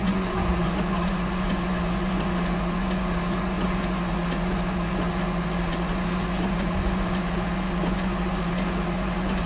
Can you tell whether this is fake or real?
fake